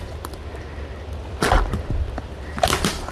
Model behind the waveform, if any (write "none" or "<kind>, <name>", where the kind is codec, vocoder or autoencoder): none